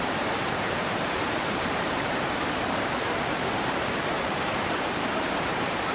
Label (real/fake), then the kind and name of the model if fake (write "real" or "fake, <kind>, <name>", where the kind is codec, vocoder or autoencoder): fake, vocoder, BigVGAN v2